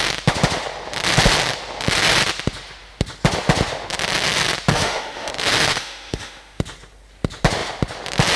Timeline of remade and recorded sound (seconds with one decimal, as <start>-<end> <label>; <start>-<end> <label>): 0.0-4.7 recorded; 4.7-5.3 remade; 5.3-5.7 recorded; 5.7-6.6 remade; 6.6-8.4 recorded